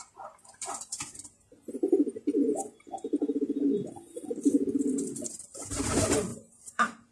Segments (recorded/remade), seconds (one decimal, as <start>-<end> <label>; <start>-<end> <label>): 0.0-6.3 recorded; 6.3-7.1 remade